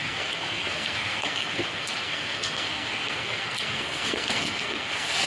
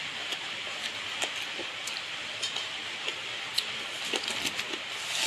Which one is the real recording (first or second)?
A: second